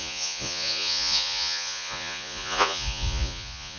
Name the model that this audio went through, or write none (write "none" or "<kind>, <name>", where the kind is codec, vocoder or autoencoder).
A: vocoder, Vocos